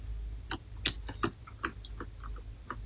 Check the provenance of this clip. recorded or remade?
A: recorded